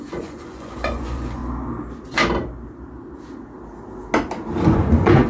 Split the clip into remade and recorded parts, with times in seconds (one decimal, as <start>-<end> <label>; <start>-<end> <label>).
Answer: 0.0-1.4 remade; 1.4-4.6 recorded; 4.6-5.3 remade